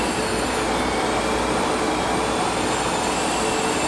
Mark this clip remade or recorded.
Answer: recorded